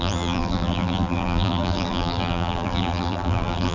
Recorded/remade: remade